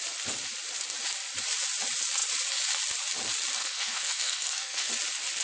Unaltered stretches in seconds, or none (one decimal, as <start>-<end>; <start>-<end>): 0.0-3.6; 4.9-5.4